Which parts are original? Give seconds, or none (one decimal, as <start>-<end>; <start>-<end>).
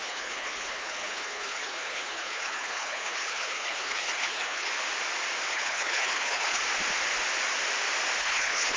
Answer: 4.7-5.5; 6.6-8.2